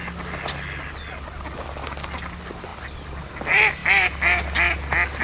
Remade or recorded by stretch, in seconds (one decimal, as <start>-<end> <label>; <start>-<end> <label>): 0.0-5.2 recorded

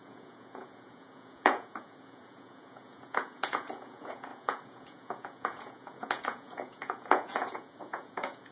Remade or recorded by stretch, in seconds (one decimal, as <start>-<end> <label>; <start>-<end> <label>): 0.0-8.5 remade

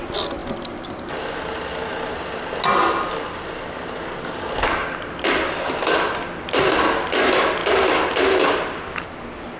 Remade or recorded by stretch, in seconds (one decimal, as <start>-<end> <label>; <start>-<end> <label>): 0.0-9.6 recorded

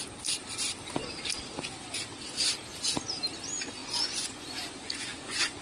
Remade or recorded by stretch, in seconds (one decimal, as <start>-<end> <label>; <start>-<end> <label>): 0.0-3.8 recorded; 3.8-5.6 remade